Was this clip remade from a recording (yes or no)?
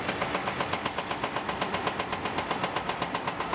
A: no